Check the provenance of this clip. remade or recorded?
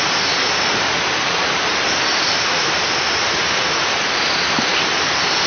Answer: recorded